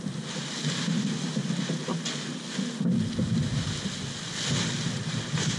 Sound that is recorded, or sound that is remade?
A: recorded